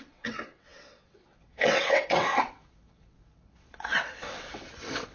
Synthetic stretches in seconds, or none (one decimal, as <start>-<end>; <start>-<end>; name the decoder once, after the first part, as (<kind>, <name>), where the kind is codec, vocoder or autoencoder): 0.0-5.1 (vocoder, WaveNeXt)